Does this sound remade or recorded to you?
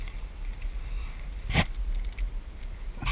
recorded